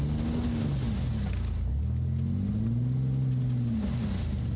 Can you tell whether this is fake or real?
real